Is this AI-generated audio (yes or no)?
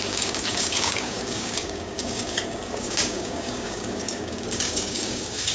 yes